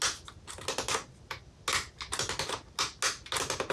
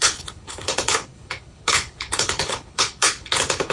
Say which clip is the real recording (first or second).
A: first